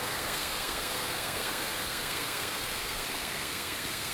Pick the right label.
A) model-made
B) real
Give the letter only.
A